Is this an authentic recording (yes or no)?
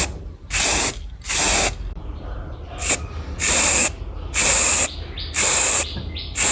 yes